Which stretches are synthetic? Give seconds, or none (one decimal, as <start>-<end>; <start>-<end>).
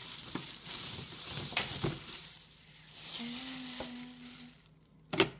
0.0-3.2